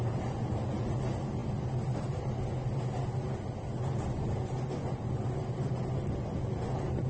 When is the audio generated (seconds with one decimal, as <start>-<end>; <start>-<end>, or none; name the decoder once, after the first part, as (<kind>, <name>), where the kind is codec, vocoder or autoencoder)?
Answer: none

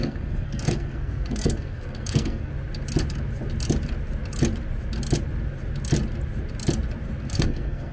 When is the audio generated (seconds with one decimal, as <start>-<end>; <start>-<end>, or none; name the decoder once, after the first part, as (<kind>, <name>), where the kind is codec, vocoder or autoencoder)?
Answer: 0.0-2.5 (codec, SNAC); 7.2-7.9

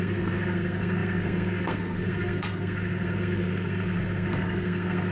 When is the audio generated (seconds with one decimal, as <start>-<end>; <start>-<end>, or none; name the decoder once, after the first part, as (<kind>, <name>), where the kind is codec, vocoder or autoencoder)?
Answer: 0.0-5.1 (codec, SNAC)

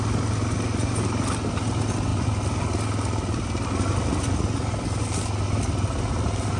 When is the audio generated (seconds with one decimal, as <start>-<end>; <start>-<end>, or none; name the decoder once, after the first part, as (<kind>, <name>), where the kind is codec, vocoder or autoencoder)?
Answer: none

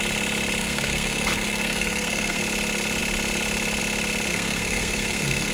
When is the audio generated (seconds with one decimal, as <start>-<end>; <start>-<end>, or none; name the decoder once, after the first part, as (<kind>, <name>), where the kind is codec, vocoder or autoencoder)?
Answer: 0.6-2.4 (codec, SNAC); 4.3-5.5

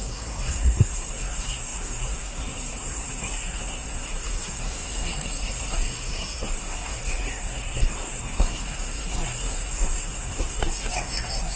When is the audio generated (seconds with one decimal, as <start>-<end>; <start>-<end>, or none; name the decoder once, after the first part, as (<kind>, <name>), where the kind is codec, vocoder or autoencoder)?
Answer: 0.0-11.6 (codec, SNAC)

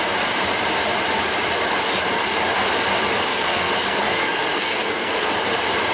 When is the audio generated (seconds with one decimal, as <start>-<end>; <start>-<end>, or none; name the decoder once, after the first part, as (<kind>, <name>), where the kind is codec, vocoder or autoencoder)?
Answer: 3.3-5.3 (codec, SNAC)